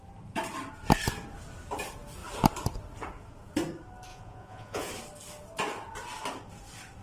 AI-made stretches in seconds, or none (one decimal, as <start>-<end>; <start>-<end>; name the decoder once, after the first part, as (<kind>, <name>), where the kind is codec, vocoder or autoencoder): 4.1-4.9 (vocoder, Vocos)